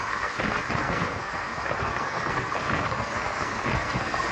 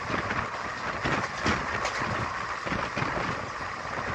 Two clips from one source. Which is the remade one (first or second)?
first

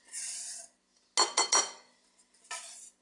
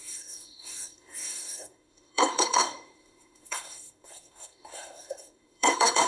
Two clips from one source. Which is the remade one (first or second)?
second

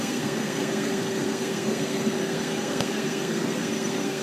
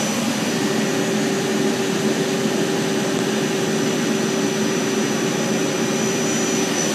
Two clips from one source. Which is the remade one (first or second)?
first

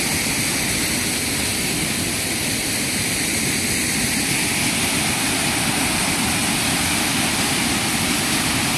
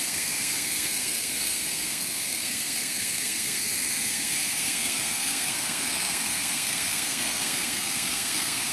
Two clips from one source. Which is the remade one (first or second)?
second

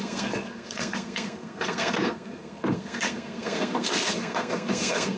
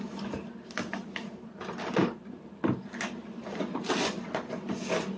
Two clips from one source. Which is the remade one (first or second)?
first